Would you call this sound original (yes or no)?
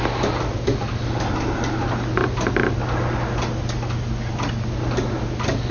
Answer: yes